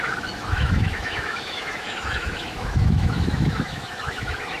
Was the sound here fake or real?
fake